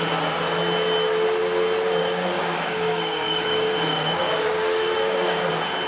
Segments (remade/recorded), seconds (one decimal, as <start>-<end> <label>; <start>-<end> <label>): 0.0-2.0 recorded; 2.0-5.5 remade; 5.5-5.9 recorded